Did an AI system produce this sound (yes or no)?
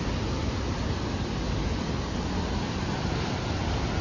no